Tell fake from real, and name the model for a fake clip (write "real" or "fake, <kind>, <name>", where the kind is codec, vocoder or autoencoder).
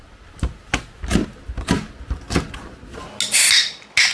real